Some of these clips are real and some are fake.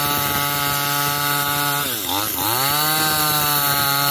real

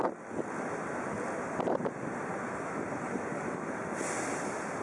real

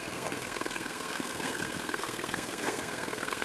fake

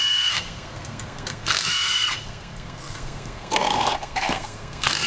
fake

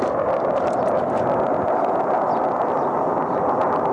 real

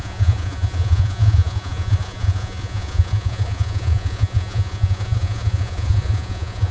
fake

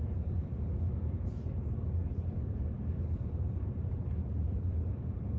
fake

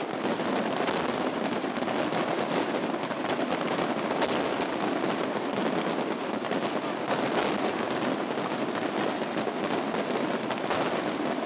real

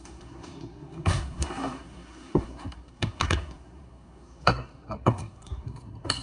fake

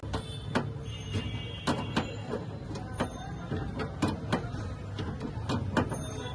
real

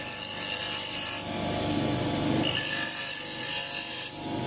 real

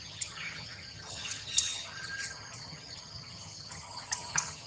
fake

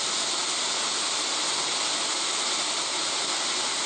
real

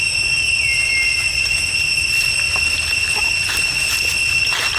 real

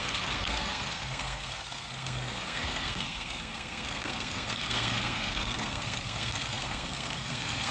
fake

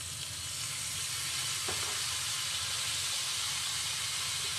real